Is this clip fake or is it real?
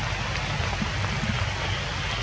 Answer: real